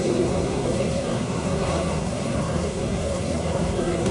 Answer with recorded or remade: remade